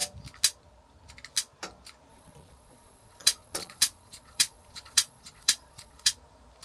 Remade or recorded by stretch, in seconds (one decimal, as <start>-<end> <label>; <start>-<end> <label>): 0.0-2.1 recorded; 2.1-6.1 remade; 6.1-6.6 recorded